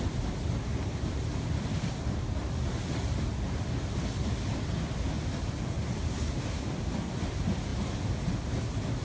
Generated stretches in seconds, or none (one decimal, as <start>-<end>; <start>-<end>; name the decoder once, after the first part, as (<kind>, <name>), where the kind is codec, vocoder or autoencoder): 0.8-2.1 (vocoder, BigVGAN v2)